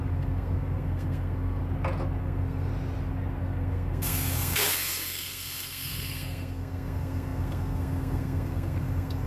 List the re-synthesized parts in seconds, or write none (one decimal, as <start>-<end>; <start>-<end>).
0.0-1.6; 2.2-2.7; 3.4-9.3